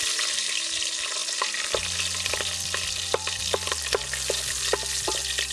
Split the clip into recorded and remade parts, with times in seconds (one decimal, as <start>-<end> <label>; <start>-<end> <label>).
0.0-5.5 recorded